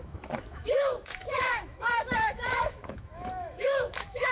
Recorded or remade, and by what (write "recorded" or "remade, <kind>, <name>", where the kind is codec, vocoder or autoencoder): remade, autoencoder, DAC-VAE